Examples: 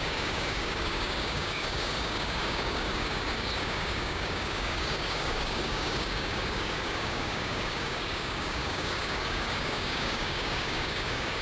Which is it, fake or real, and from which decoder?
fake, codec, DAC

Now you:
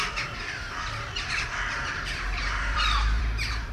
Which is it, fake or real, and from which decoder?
fake, vocoder, BigVGAN v2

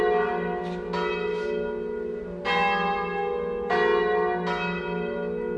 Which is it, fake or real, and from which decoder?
real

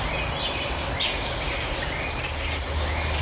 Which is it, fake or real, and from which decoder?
real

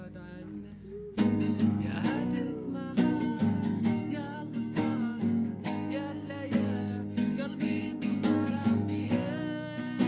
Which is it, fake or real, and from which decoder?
fake, codec, DAC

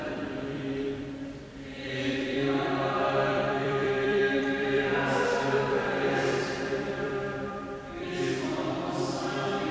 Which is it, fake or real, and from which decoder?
fake, vocoder, BigVGAN v2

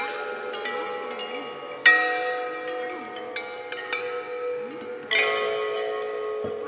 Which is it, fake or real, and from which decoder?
real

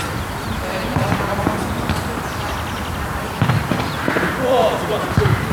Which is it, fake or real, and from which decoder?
fake, vocoder, BigVGAN v2